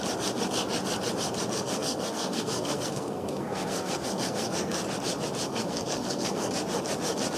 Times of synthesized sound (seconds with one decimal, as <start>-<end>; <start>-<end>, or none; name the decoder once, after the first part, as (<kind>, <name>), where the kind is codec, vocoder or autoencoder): 1.5-4.8 (codec, SNAC); 5.5-6.5